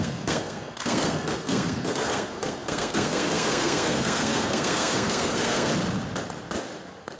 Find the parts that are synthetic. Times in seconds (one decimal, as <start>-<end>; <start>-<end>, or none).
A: 0.0-5.7